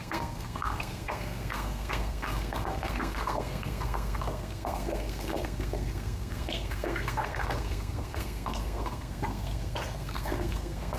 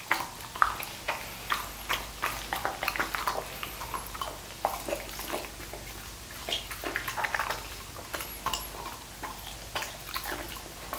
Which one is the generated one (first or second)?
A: first